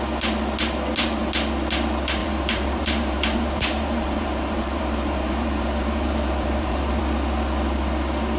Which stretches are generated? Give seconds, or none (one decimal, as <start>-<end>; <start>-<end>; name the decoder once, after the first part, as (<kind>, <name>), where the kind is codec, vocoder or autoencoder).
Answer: 2.2-7.0 (vocoder, BigVGAN v2)

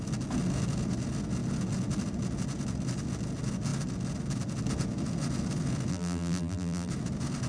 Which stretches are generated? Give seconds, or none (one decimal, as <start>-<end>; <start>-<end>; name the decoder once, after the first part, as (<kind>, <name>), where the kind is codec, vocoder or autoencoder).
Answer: 5.9-6.9 (vocoder, BigVGAN v2)

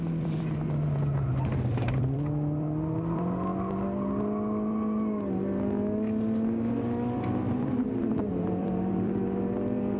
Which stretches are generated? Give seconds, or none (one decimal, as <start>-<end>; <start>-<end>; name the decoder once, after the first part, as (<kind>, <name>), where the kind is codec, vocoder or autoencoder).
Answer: 0.0-3.5 (vocoder, BigVGAN v2); 7.6-10.0

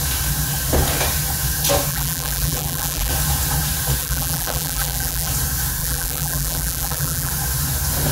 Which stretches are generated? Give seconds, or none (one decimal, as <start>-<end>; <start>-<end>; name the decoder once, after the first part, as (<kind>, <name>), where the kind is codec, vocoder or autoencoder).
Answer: 1.9-3.1 (vocoder, BigVGAN v2); 4.0-5.3; 5.8-7.3

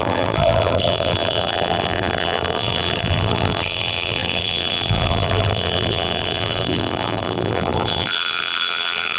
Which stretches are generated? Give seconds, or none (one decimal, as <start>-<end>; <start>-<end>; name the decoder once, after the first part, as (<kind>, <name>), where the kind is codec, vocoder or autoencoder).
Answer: 0.0-9.2 (vocoder, BigVGAN v2)